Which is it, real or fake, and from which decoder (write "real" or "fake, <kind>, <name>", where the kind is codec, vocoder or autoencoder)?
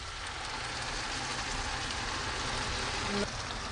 real